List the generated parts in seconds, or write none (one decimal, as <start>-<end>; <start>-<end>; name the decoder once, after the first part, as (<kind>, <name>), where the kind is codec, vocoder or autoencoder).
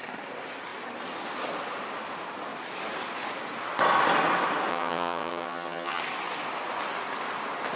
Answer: 4.7-6.0 (vocoder, HiFi-GAN)